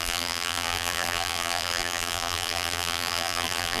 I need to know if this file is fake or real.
fake